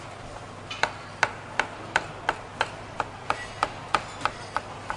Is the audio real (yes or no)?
yes